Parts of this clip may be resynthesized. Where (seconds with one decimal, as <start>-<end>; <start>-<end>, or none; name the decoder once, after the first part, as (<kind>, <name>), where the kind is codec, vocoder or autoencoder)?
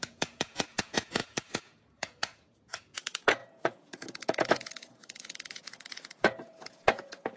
0.0-7.4 (vocoder, Vocos)